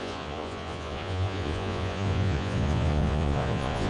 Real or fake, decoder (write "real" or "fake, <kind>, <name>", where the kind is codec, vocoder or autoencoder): fake, vocoder, Vocos